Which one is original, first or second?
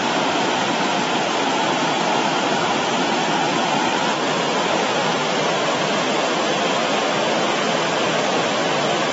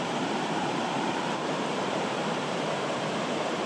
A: first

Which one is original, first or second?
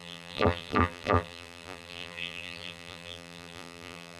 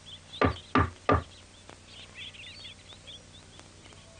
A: second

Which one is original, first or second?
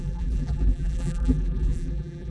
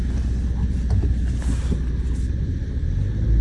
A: second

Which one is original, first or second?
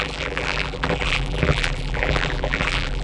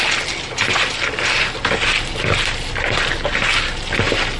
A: second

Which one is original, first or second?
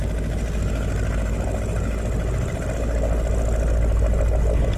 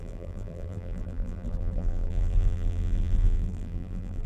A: first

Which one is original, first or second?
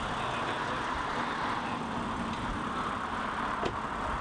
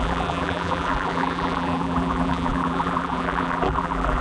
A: first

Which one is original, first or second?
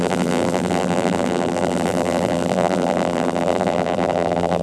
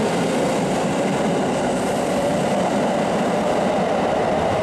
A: second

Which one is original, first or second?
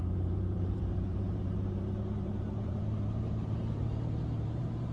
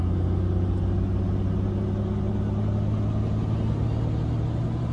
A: second